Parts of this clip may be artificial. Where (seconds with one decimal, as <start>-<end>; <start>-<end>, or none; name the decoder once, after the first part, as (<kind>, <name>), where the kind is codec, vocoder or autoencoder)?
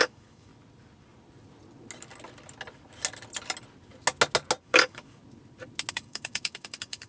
0.0-0.5 (codec, DAC); 4.6-5.2; 5.9-7.1